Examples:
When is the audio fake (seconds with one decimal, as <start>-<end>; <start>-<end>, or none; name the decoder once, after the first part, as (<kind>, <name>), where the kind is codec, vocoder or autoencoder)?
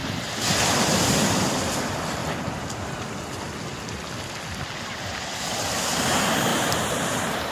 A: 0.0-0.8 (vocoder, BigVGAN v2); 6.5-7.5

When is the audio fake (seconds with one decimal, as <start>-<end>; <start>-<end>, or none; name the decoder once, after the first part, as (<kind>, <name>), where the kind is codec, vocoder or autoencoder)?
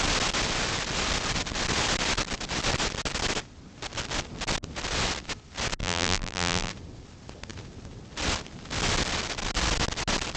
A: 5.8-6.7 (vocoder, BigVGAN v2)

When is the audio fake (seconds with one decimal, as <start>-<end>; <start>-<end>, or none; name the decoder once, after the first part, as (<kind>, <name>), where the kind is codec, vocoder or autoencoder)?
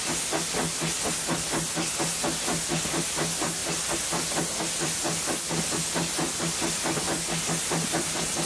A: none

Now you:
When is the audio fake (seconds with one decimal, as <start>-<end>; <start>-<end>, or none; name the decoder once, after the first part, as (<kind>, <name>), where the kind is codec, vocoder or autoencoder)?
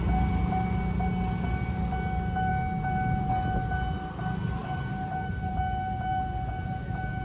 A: none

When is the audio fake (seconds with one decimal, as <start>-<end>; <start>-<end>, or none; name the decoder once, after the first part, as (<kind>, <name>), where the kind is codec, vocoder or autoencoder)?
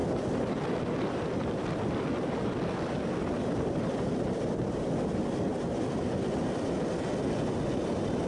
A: 0.0-4.1 (vocoder, BigVGAN v2)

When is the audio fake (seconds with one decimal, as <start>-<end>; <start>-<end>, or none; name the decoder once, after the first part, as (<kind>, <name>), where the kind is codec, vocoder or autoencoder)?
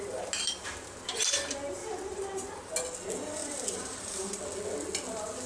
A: 1.8-2.7 (vocoder, BigVGAN v2); 3.4-4.4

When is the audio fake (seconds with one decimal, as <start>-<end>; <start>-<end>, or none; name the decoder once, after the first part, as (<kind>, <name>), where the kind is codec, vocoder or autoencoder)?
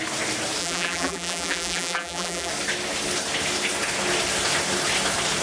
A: 0.6-2.5 (vocoder, BigVGAN v2)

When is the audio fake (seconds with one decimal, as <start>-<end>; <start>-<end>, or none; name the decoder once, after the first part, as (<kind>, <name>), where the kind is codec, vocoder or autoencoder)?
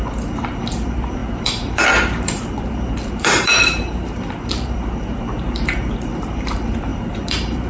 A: 0.0-7.7 (vocoder, BigVGAN v2)